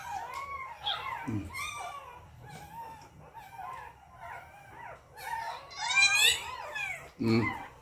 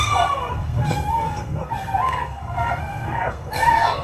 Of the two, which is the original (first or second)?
first